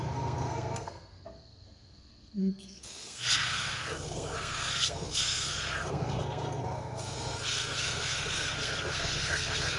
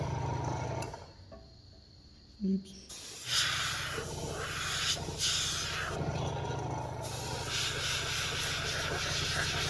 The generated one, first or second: first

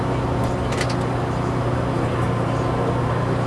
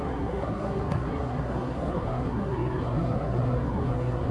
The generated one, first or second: second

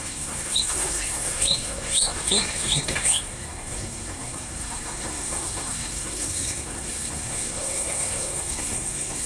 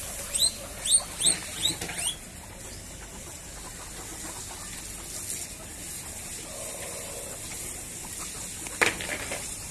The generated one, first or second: first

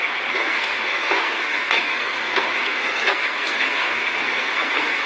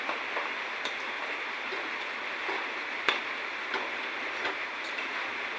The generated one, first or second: first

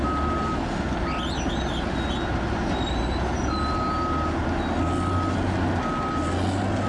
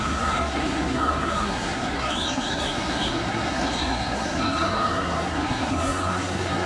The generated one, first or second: second